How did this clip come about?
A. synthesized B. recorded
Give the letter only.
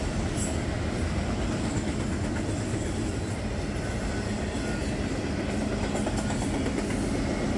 B